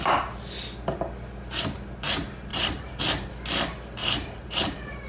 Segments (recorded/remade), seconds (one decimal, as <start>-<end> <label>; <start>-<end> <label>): 0.0-2.5 recorded; 2.5-3.0 remade; 3.0-4.0 recorded; 4.0-5.1 remade